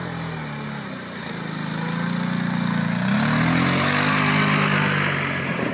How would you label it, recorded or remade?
recorded